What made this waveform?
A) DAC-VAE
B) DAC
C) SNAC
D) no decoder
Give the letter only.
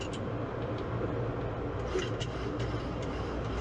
D